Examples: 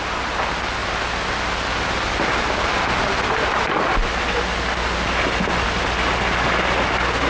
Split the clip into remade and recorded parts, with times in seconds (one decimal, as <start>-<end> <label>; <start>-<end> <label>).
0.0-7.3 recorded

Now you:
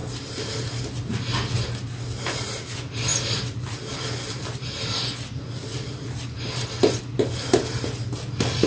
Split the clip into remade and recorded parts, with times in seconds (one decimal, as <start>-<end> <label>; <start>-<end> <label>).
0.0-3.1 recorded; 3.1-6.4 remade; 6.4-8.7 recorded

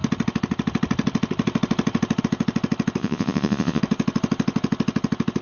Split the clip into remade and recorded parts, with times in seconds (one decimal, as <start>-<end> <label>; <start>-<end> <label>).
0.0-3.0 recorded; 3.0-3.8 remade; 3.8-5.4 recorded